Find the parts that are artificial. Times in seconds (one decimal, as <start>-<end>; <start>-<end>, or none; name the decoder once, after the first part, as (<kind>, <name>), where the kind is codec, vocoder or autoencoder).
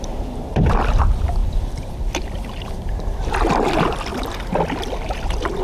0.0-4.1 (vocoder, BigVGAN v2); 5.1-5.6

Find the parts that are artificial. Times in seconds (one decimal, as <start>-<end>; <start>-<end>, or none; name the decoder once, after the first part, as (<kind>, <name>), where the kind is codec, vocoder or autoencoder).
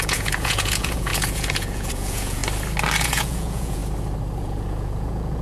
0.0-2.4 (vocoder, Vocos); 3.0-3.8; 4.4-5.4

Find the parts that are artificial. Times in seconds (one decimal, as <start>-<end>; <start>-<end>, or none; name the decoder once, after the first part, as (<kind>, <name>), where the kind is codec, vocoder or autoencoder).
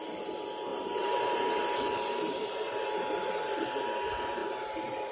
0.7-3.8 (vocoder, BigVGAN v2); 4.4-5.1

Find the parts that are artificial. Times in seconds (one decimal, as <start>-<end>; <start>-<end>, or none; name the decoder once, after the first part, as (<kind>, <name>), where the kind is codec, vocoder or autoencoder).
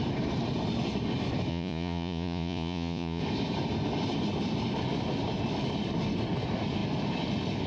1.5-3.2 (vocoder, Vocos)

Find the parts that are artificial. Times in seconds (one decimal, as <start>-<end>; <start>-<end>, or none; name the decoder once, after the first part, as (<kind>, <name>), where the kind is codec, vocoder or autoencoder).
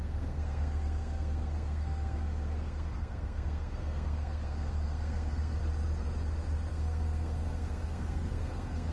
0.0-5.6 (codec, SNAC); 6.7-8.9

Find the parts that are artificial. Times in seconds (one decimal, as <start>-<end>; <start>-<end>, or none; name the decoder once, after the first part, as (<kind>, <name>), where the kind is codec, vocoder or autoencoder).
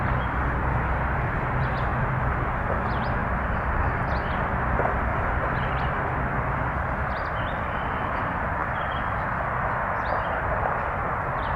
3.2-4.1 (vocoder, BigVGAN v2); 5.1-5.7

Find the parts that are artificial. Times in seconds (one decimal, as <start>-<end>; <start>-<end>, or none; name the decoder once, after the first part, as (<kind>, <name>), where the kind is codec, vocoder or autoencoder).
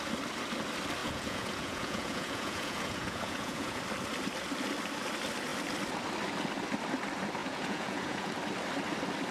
1.0-3.8 (vocoder, Vocos); 7.4-8.3